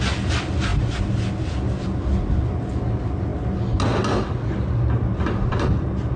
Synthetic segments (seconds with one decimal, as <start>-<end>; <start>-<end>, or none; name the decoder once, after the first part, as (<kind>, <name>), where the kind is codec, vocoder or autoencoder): none